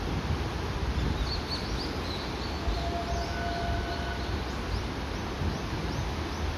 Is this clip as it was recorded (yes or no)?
yes